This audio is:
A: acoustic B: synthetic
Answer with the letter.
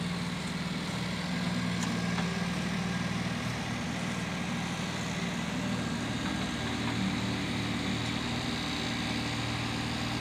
A